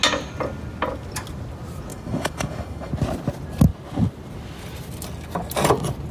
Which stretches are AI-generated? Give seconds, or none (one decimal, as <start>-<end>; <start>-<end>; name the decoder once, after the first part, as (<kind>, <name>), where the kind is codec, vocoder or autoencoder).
1.9-2.9 (autoencoder, DAC-VAE)